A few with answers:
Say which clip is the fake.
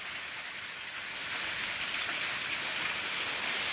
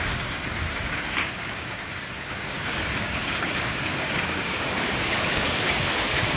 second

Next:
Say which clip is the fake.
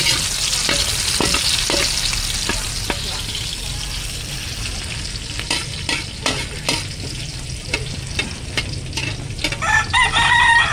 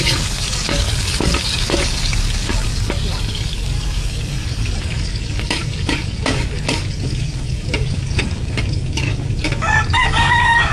second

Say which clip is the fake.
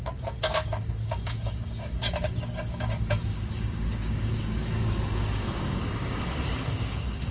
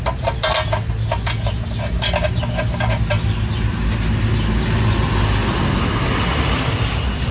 first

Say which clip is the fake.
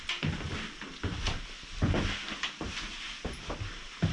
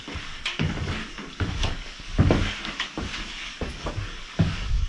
second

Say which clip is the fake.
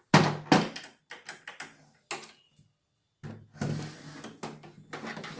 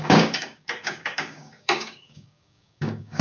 second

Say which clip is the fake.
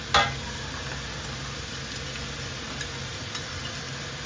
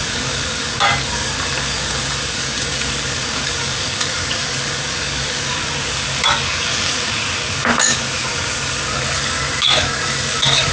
second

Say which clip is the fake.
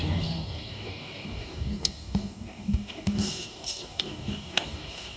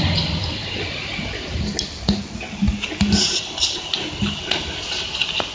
first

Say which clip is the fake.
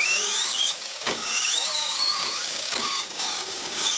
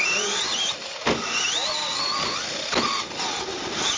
first